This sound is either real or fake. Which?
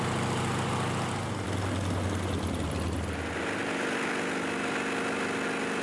real